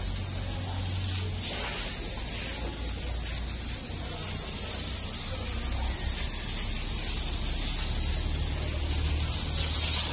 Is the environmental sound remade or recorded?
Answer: recorded